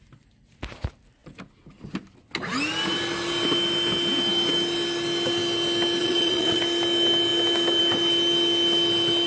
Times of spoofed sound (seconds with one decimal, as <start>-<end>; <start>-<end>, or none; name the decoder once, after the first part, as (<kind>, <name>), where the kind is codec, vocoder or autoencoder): 6.0-6.6 (vocoder, Vocos)